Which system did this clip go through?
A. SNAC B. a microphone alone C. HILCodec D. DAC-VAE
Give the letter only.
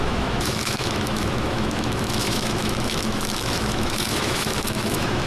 D